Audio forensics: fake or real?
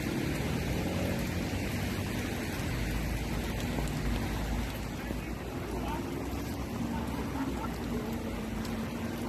real